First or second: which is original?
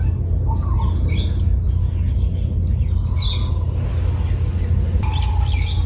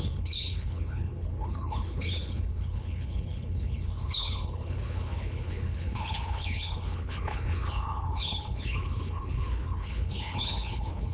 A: first